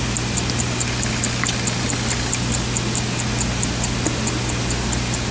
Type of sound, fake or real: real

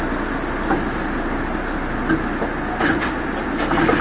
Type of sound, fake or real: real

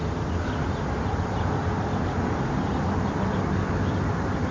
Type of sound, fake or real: real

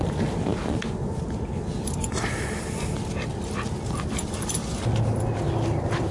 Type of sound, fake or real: fake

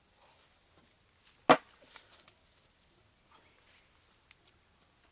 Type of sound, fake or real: real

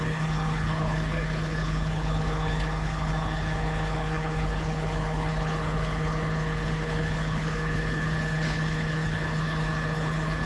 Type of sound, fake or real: fake